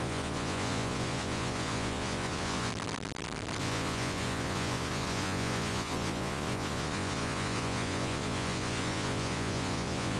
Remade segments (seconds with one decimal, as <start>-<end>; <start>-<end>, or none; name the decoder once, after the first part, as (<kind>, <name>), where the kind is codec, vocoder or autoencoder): 0.0-2.7 (vocoder, Vocos); 3.6-10.2